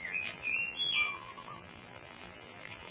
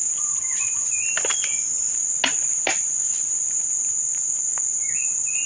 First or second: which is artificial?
first